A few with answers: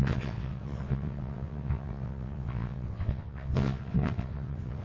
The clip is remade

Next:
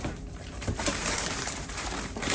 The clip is remade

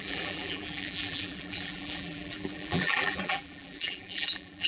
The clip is remade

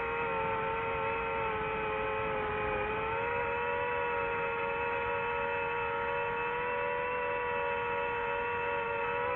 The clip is recorded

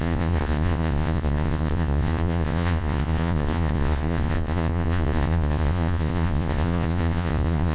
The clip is remade